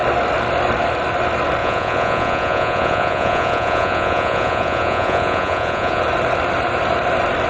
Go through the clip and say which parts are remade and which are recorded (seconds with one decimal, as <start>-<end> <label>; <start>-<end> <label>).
0.0-1.6 recorded; 1.6-6.0 remade; 6.0-7.5 recorded